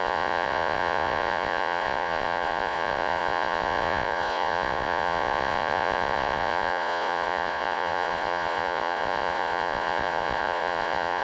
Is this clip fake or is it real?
fake